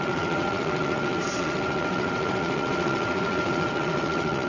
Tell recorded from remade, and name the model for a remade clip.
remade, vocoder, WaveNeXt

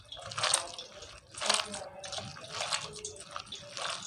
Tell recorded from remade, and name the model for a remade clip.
recorded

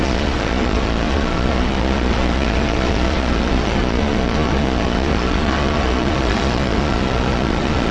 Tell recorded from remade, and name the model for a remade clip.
remade, vocoder, Vocos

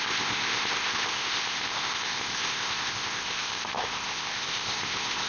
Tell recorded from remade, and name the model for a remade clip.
remade, codec, ZipCodec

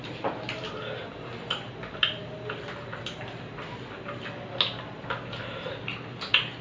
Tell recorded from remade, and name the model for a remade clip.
recorded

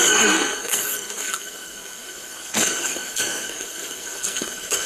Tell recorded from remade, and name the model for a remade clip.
remade, codec, SNAC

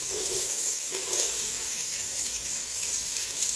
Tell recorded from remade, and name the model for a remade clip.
remade, codec, DAC